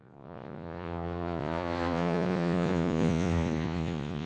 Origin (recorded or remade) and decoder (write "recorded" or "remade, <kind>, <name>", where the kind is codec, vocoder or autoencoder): remade, vocoder, Vocos